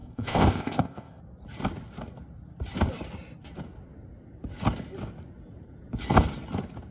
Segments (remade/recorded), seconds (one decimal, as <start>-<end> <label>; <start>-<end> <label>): 0.0-1.2 remade; 1.2-6.9 recorded

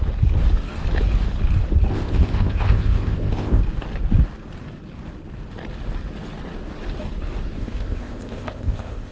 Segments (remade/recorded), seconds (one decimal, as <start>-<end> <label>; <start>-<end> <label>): 0.0-1.9 recorded; 1.9-3.6 remade; 3.6-7.6 recorded; 7.6-9.1 remade